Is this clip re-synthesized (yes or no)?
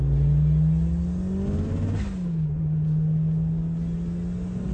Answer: no